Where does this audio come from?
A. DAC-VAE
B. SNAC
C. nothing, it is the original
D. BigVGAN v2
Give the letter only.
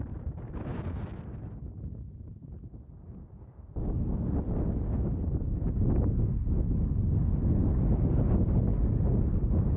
C